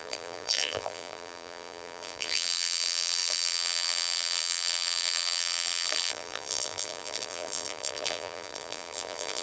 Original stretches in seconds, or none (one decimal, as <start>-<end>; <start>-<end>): none